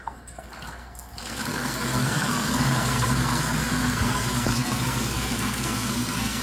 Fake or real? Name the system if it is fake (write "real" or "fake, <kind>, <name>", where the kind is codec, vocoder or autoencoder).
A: fake, codec, SNAC